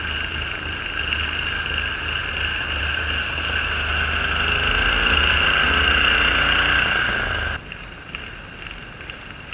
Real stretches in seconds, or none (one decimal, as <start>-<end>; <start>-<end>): 0.0-9.5